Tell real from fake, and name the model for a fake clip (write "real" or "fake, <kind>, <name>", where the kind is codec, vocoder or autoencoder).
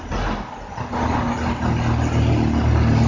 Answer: real